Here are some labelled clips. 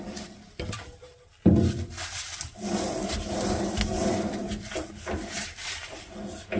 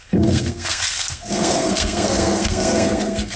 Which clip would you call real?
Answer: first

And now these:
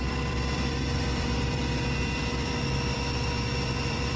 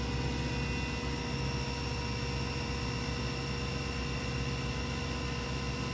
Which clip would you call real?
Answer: second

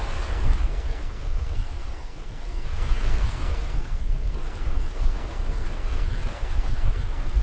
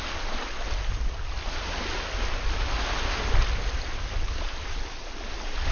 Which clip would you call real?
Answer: second